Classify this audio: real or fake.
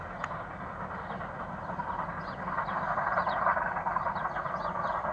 real